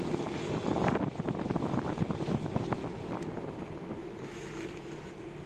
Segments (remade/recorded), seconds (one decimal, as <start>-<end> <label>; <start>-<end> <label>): 0.0-4.0 recorded; 4.0-5.1 remade; 5.1-5.5 recorded